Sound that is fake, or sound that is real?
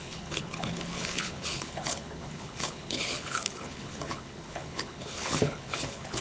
fake